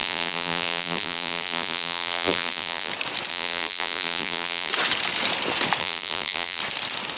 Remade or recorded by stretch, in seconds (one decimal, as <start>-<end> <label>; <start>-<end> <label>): 0.0-2.9 remade; 2.9-3.3 recorded; 3.3-4.7 remade; 4.7-5.8 recorded; 5.8-6.6 remade; 6.6-7.2 recorded